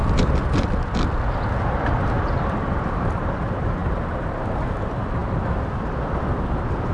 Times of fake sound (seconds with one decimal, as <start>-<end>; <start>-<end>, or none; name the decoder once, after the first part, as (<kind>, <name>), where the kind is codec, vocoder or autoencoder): 2.9-5.2 (vocoder, BigVGAN v2)